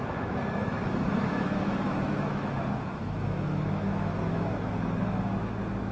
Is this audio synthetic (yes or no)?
yes